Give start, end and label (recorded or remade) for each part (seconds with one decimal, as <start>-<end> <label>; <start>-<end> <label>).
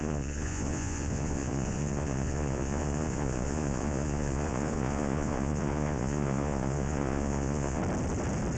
0.0-7.8 remade; 7.8-8.6 recorded